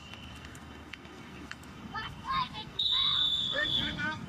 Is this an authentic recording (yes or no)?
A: no